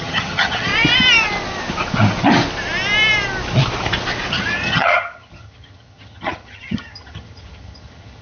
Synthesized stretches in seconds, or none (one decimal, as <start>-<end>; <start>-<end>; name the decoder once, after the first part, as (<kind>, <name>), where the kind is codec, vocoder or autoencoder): 0.0-0.7 (vocoder, HiFi-GAN); 4.3-8.2

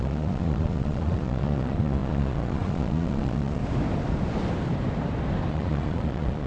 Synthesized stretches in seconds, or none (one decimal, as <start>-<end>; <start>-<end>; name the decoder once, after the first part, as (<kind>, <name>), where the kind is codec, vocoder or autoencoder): 0.0-3.6 (vocoder, Vocos); 5.5-6.5

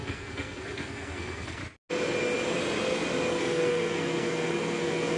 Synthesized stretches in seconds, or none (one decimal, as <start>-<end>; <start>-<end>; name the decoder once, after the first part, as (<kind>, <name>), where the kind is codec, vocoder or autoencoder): 0.0-1.6 (codec, SNAC); 3.4-5.2